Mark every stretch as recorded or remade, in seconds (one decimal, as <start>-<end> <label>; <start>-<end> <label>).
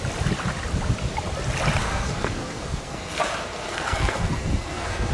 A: 0.0-1.8 recorded; 1.8-5.1 remade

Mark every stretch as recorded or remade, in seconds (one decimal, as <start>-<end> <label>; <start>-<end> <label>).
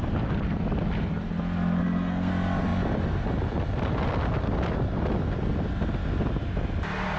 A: 0.0-1.8 recorded; 1.8-2.3 remade; 2.3-7.2 recorded